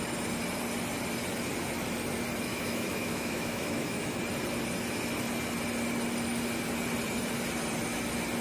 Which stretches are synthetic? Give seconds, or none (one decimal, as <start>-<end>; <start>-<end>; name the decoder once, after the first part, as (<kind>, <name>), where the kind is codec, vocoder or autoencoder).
2.5-4.2 (autoencoder, DAC-VAE)